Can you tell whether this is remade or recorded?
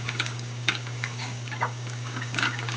remade